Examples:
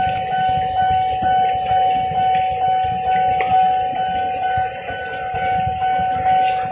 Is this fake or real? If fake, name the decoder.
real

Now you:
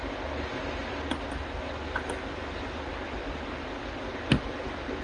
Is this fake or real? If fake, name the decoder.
real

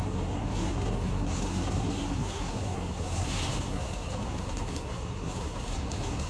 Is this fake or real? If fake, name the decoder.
fake, codec, SNAC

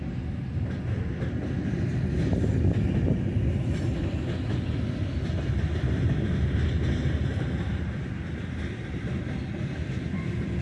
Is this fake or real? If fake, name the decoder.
real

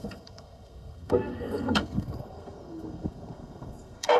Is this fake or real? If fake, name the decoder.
fake, codec, SNAC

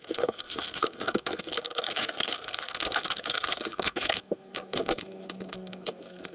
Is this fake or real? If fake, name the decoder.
fake, codec, SNAC